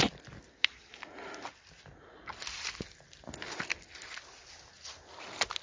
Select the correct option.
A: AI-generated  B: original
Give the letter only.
B